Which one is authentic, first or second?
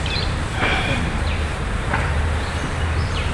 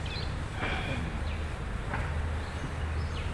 second